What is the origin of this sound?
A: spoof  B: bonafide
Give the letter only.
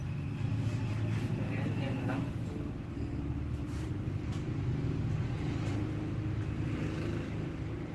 B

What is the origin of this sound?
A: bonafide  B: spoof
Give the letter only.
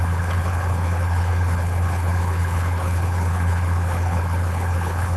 B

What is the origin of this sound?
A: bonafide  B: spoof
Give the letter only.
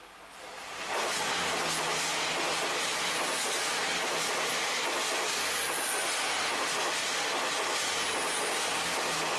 A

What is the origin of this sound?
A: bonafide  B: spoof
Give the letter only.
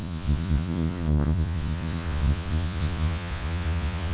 B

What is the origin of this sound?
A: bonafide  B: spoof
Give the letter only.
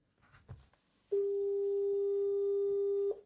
A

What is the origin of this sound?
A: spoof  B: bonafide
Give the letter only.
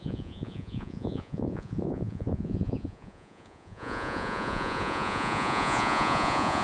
A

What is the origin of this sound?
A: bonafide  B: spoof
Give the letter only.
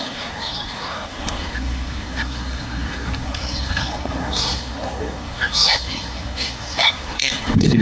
B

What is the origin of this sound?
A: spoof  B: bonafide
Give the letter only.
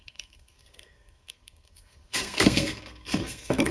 A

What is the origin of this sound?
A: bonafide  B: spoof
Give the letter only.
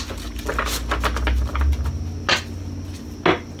A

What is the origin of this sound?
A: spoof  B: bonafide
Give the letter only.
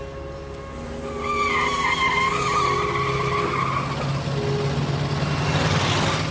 B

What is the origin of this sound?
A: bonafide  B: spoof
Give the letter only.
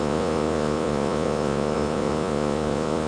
B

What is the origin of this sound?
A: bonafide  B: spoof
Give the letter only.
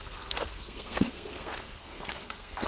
B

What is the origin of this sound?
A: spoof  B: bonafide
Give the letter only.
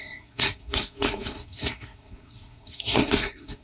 A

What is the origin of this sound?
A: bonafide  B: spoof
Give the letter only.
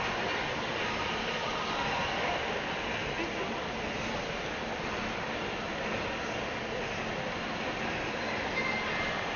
A